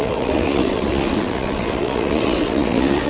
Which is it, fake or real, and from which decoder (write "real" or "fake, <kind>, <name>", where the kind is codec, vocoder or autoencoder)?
fake, vocoder, WaveNeXt